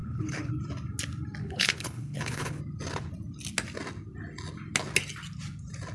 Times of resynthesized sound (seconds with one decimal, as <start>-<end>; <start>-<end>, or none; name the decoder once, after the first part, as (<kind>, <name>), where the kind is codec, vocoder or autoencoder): 0.0-0.5 (codec, HILCodec); 1.4-2.6

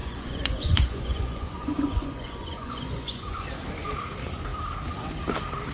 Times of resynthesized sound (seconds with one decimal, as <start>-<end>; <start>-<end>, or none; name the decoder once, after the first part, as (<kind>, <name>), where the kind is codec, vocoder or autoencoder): 0.0-3.4 (vocoder, Vocos)

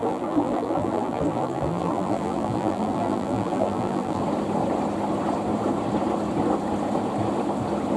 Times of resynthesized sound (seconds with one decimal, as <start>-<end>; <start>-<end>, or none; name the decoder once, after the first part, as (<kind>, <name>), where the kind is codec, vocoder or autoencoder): 0.0-4.2 (vocoder, BigVGAN v2)

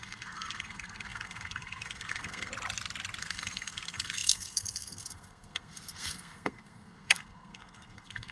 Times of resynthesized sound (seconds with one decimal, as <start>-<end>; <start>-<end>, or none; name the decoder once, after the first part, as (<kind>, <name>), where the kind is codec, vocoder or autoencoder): 0.0-2.5 (codec, SNAC); 3.2-8.3

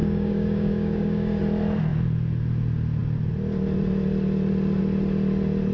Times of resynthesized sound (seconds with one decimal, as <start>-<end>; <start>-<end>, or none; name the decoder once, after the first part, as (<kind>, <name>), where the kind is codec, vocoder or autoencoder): 0.0-1.4 (codec, DAC)